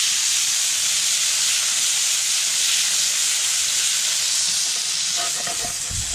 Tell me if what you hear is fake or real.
real